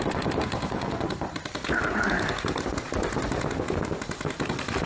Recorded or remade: recorded